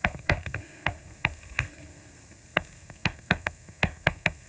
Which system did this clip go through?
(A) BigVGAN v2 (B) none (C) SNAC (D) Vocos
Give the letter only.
C